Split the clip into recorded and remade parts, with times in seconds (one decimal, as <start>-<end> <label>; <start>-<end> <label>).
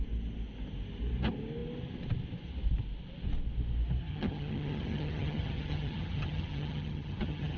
0.0-4.0 recorded; 4.0-7.6 remade